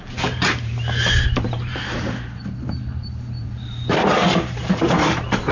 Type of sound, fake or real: fake